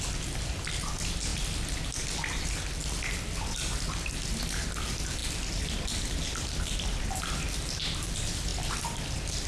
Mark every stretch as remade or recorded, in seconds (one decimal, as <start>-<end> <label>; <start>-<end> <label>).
0.0-9.5 recorded